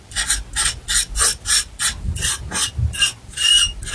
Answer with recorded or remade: recorded